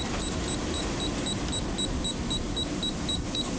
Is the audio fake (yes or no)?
no